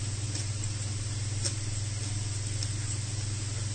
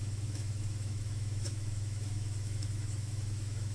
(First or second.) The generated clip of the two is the second